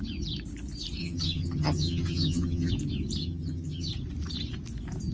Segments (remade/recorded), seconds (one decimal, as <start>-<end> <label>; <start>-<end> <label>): 0.0-1.0 recorded; 1.0-2.7 remade; 2.7-3.2 recorded; 3.2-3.9 remade; 3.9-5.1 recorded